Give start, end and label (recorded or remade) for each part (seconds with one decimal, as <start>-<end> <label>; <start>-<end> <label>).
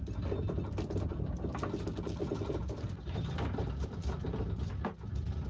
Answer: 0.0-5.5 recorded